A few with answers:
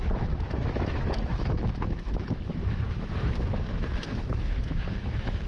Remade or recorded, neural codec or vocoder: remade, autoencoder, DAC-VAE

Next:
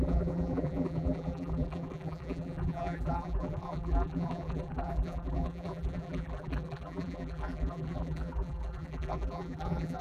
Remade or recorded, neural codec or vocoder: remade, vocoder, BigVGAN v2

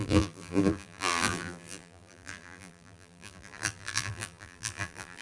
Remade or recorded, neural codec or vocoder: remade, vocoder, BigVGAN v2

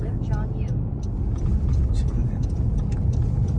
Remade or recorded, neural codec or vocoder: recorded